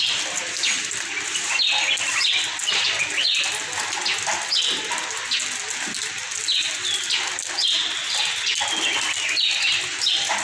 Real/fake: real